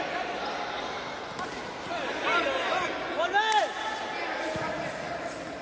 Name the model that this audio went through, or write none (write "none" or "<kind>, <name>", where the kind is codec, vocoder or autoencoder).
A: none